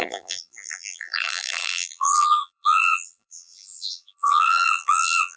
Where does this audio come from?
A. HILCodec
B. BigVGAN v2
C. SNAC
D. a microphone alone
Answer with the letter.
B